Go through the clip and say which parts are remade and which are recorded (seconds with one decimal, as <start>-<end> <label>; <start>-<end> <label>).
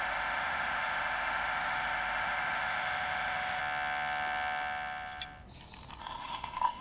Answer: 0.0-3.6 remade; 3.6-6.0 recorded; 6.0-6.8 remade